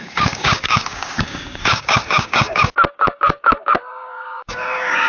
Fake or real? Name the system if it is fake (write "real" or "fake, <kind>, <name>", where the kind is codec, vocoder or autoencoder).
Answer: fake, codec, DAC